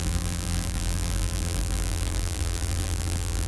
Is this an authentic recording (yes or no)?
no